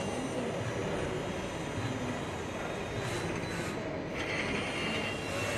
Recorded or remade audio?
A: recorded